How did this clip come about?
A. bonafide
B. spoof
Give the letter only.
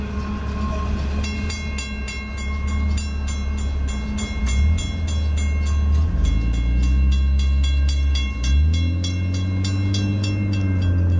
A